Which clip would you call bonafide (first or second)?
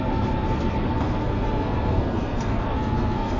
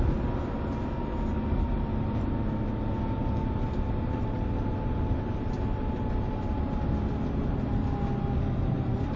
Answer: second